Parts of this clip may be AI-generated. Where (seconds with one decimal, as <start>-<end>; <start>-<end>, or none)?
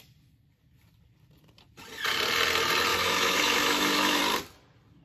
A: 2.9-4.2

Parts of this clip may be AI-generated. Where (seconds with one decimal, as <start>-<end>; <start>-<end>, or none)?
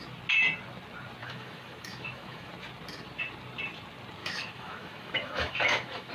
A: 1.2-2.5; 4.2-6.1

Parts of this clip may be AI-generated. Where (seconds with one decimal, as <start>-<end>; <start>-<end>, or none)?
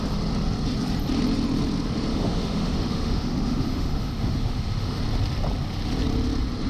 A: 2.1-5.0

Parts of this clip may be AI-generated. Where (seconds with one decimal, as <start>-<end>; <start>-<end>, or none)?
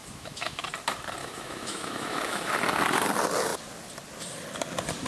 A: 0.0-0.7; 1.2-2.5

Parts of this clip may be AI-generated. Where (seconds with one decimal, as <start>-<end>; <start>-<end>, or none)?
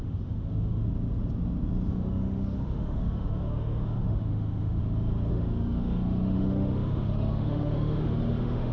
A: 0.0-0.8; 1.9-4.8; 5.3-8.7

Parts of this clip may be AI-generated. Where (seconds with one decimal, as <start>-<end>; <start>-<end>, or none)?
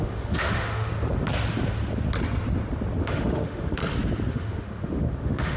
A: 0.0-0.9; 3.0-3.8; 4.3-5.6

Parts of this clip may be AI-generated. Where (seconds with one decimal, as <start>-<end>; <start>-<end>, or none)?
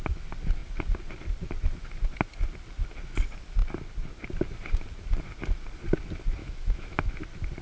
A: 6.4-7.1